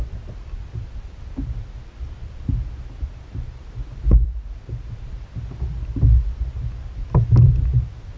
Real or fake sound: real